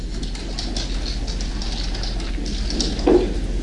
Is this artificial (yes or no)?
no